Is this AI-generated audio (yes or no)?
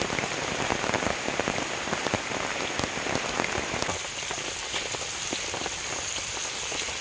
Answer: no